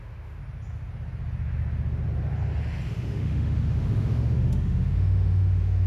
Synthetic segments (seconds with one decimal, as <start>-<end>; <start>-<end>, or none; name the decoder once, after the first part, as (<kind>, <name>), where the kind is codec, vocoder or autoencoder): 0.0-0.4 (autoencoder, DAC-VAE); 2.9-5.9